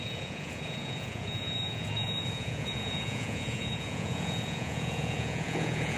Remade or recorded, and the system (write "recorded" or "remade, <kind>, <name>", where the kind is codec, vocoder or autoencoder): remade, vocoder, Vocos